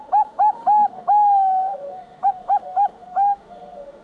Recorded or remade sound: remade